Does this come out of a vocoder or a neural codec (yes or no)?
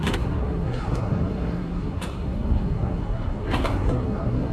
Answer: yes